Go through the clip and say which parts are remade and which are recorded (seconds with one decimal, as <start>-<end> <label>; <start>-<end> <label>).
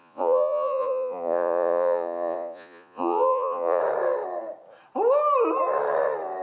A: 0.0-3.8 remade; 3.8-6.4 recorded